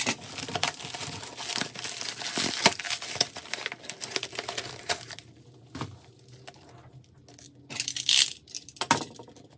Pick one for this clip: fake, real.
real